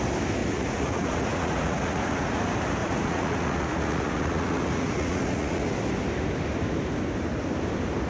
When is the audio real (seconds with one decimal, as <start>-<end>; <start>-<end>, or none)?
0.0-0.4; 2.4-2.8; 5.7-8.1